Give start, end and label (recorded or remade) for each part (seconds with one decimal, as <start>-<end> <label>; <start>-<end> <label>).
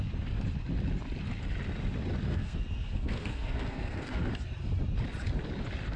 0.0-2.3 recorded; 2.3-4.3 remade; 4.3-6.0 recorded